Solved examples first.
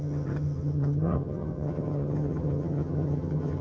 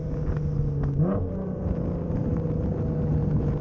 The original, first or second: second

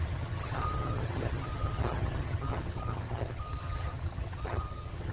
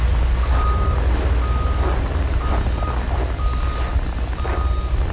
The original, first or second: second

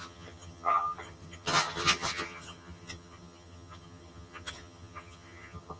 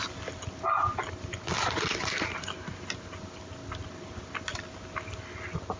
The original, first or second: second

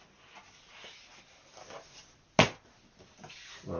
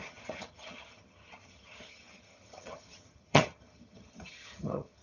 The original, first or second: first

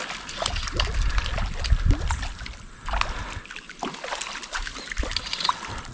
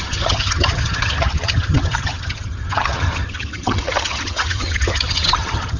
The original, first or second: first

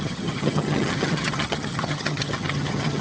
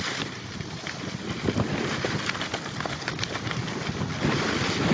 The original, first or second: second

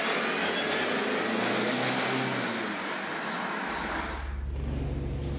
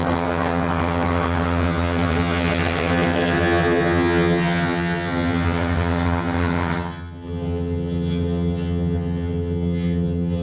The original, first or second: first